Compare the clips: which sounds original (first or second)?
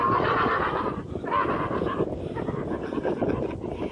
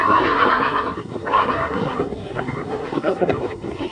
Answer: first